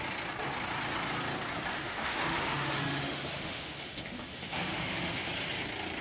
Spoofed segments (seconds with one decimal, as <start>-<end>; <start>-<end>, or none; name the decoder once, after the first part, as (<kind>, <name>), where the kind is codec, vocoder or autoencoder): 1.7-5.3 (autoencoder, DAC-VAE)